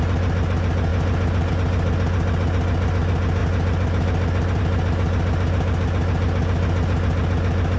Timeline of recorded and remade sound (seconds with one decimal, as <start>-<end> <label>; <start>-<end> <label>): 0.0-7.8 recorded